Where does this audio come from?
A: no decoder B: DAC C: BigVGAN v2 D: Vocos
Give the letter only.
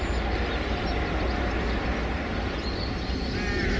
A